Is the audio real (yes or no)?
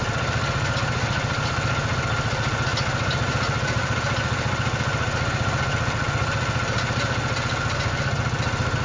yes